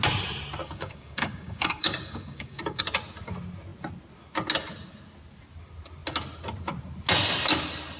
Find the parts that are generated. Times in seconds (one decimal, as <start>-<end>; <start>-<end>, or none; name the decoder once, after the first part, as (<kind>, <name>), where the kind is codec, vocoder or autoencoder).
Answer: 0.6-2.8 (codec, DAC)